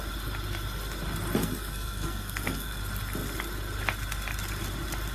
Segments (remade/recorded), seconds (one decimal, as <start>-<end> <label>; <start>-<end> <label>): 0.0-1.4 recorded; 1.4-2.8 remade; 2.8-5.1 recorded